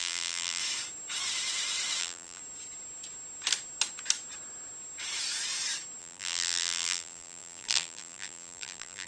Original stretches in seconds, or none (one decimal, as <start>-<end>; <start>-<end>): 0.6-2.0; 2.4-6.0